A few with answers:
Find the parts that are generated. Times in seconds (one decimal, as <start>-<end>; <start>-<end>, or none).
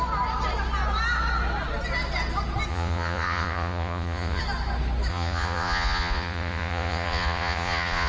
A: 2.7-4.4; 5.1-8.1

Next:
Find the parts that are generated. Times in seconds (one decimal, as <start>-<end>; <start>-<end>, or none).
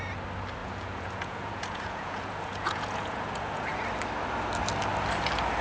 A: 0.6-3.8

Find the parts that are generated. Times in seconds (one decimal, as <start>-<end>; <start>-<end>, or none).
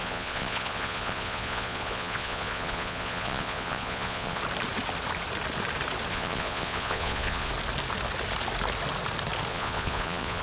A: 0.0-4.4; 6.1-7.5; 9.5-10.4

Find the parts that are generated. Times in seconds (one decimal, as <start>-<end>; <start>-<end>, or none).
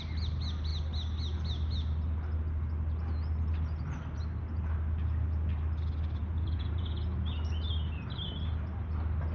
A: 6.2-7.0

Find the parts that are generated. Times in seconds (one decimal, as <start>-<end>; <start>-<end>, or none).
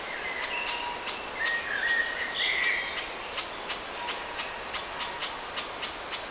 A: none